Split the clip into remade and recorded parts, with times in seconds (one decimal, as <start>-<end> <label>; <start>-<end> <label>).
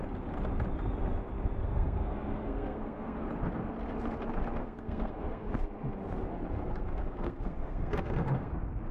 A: 0.0-1.6 recorded; 1.6-3.3 remade; 3.3-4.6 recorded; 4.6-5.5 remade; 5.5-6.6 recorded; 6.6-8.5 remade; 8.5-8.9 recorded